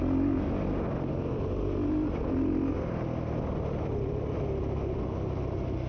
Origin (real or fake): real